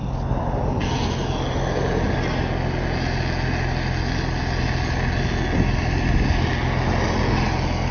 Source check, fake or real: real